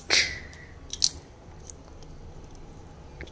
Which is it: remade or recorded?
recorded